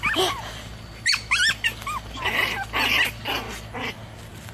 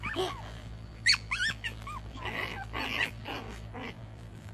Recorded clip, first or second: first